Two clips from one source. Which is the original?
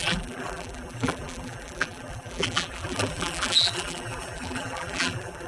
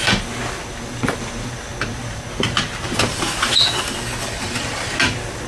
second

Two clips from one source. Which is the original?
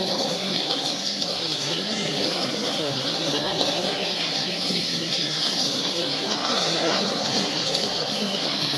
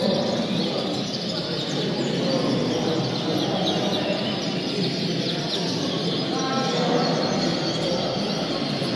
second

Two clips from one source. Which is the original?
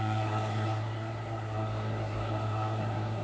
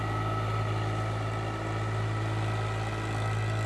second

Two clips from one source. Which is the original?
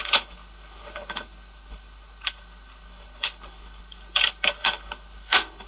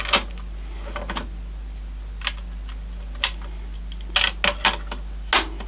second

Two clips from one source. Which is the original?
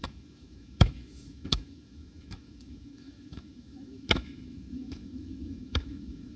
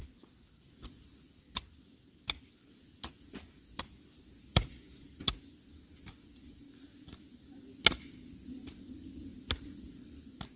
second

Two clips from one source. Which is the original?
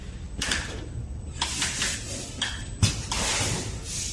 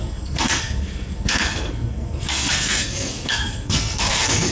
first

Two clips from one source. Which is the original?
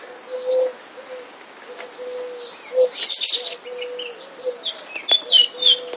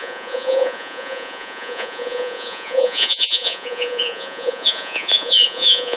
first